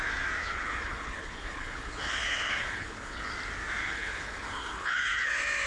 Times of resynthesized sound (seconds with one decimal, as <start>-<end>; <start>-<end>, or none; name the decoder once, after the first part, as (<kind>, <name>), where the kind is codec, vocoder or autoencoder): 0.4-3.3 (codec, HILCodec); 3.8-5.3